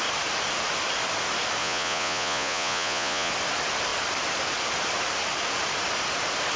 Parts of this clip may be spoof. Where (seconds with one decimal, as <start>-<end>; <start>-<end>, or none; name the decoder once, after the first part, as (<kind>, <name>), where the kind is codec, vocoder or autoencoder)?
1.6-3.3 (vocoder, Vocos)